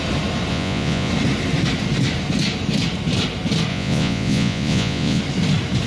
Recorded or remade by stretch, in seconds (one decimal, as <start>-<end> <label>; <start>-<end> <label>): 0.0-0.5 recorded; 0.5-1.1 remade; 1.1-3.7 recorded; 3.7-5.2 remade; 5.2-5.9 recorded